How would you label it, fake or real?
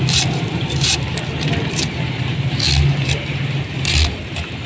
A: real